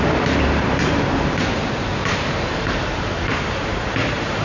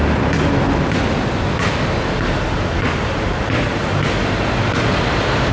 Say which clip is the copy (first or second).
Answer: first